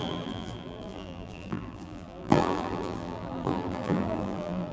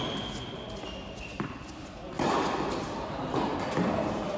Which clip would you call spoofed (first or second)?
first